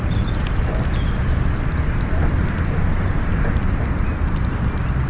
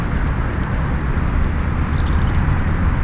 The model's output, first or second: second